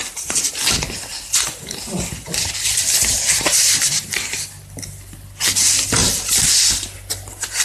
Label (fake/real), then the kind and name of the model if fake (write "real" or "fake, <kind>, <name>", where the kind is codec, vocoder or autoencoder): fake, vocoder, BigVGAN v2